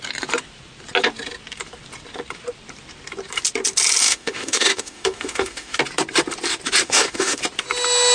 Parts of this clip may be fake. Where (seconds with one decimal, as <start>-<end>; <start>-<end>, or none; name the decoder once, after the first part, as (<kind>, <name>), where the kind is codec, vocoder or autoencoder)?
4.0-5.8 (autoencoder, DAC-VAE); 6.8-7.4